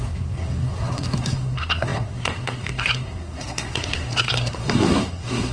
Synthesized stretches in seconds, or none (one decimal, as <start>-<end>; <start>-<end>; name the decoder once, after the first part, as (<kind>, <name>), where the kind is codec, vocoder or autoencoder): 0.0-5.5 (codec, SNAC)